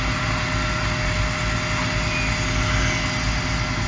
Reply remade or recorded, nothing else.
recorded